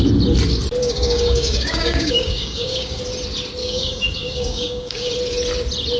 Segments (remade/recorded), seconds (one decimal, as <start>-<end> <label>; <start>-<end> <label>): 0.0-0.8 recorded; 0.8-3.0 remade; 3.0-3.6 recorded; 3.6-5.1 remade; 5.1-6.0 recorded